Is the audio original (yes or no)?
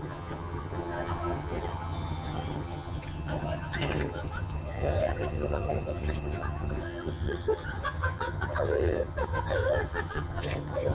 no